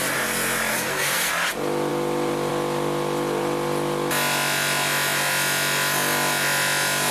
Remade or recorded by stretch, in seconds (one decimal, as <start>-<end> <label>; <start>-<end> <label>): 0.0-0.7 recorded; 0.7-1.3 remade; 1.3-7.1 recorded